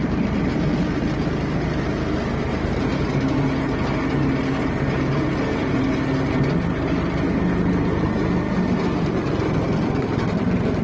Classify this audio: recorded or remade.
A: recorded